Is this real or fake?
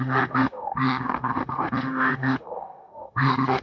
fake